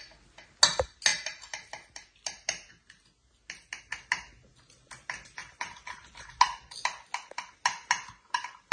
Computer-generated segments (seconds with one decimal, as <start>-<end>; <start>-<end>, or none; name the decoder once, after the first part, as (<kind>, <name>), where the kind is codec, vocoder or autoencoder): none